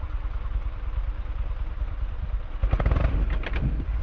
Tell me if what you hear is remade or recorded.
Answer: remade